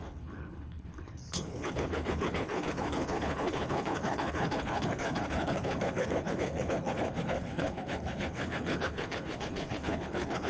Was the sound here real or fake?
fake